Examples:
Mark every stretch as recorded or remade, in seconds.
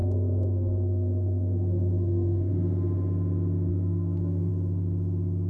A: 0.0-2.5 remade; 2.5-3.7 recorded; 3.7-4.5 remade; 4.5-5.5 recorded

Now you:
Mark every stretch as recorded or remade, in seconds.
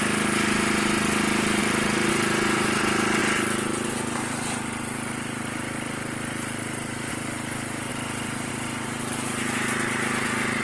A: 0.0-1.6 recorded; 1.6-2.1 remade; 2.1-7.9 recorded; 7.9-8.5 remade; 8.5-10.6 recorded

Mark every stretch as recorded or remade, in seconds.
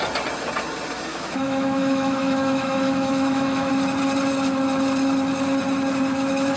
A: 0.0-1.1 recorded; 1.1-3.7 remade; 3.7-6.6 recorded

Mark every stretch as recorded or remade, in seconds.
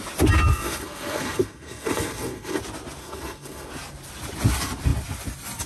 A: 0.0-0.5 recorded; 0.5-2.6 remade; 2.6-3.0 recorded; 3.0-3.7 remade; 3.7-5.7 recorded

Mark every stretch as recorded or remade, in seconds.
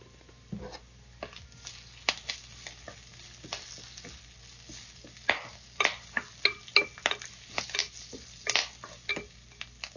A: 0.0-10.0 recorded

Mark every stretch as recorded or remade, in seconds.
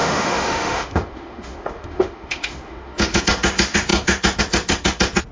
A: 0.0-3.2 remade; 3.2-5.3 recorded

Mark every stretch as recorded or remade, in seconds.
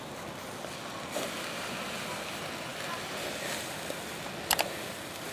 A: 0.0-5.3 recorded